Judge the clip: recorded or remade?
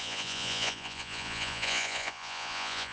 remade